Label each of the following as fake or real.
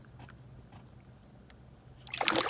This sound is real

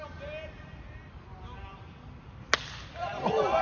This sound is real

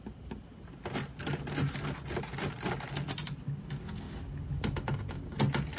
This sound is real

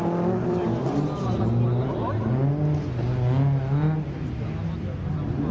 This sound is real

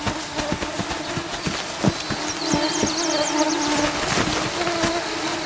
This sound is real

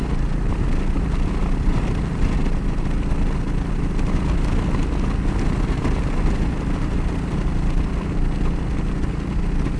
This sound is real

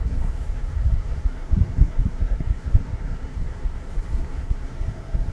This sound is fake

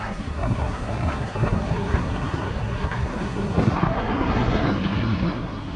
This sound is fake